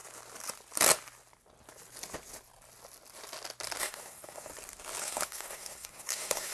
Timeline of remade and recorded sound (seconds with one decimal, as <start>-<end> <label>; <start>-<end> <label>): 0.0-3.8 recorded; 3.8-4.5 remade; 4.5-5.0 recorded; 5.0-6.5 remade